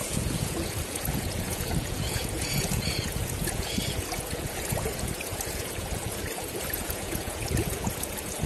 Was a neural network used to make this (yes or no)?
yes